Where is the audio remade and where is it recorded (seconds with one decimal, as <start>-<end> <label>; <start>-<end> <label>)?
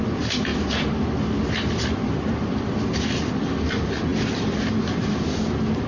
0.0-0.5 recorded; 0.5-3.3 remade; 3.3-4.1 recorded; 4.1-4.7 remade; 4.7-5.9 recorded